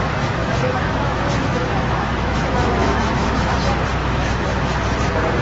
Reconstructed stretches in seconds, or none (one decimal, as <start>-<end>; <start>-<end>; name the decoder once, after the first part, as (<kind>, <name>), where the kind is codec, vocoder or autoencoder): 0.4-3.6 (autoencoder, DAC-VAE); 4.0-4.7